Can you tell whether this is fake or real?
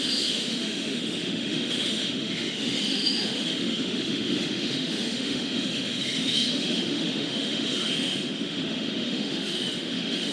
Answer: fake